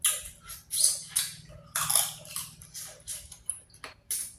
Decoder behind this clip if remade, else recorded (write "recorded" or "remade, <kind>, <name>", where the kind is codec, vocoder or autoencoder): recorded